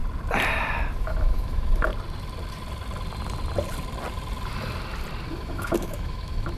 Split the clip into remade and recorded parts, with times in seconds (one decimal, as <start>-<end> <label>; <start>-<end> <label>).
0.0-1.0 recorded; 1.0-1.9 remade; 1.9-5.3 recorded; 5.3-6.6 remade